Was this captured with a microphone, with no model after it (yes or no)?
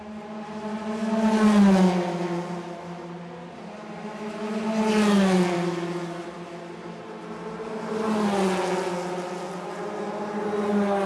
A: yes